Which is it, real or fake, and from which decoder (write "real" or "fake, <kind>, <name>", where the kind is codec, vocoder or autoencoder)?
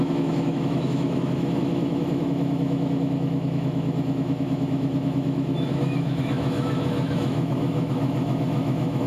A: fake, autoencoder, DAC-VAE